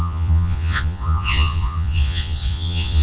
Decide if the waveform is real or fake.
fake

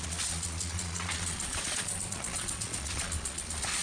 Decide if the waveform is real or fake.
fake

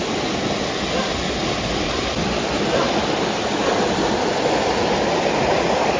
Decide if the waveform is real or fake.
real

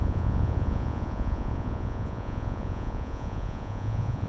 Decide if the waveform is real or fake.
fake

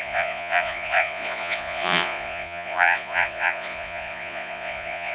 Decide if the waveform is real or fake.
fake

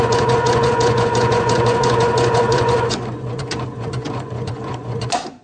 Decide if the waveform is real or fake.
fake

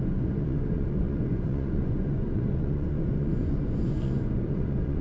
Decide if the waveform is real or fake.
fake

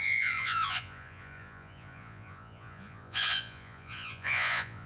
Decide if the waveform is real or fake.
fake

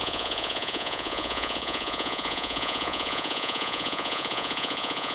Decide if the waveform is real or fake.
fake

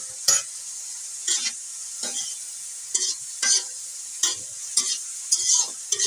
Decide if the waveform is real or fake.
fake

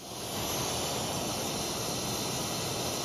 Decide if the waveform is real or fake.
real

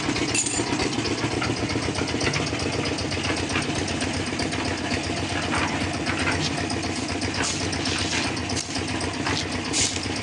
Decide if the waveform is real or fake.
real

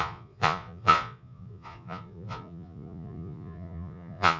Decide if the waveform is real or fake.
fake